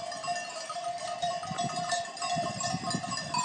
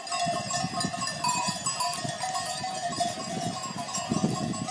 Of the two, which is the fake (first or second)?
first